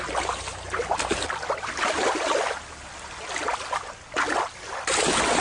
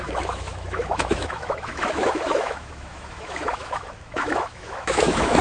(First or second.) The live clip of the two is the first